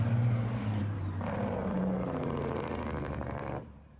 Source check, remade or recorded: remade